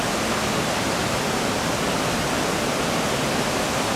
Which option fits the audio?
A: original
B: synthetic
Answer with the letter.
A